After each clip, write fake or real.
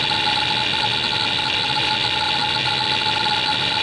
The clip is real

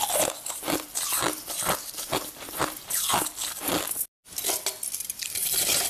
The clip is real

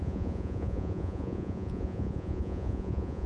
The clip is fake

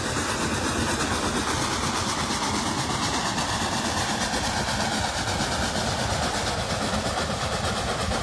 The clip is real